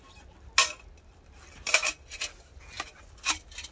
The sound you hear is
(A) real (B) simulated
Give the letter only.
A